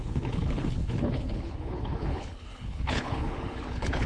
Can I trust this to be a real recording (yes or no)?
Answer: no